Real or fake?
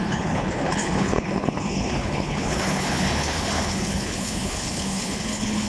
fake